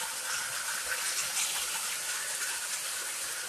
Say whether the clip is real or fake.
real